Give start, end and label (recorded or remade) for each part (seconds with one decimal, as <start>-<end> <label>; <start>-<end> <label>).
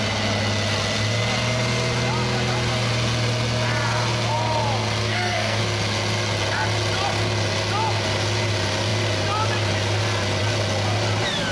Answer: 0.0-5.1 recorded; 5.1-5.6 remade; 5.6-11.5 recorded